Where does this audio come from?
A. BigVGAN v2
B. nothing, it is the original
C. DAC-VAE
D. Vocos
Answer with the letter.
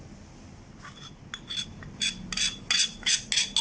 B